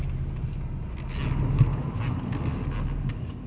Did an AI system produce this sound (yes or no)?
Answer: no